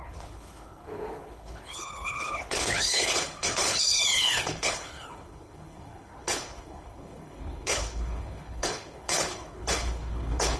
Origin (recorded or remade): remade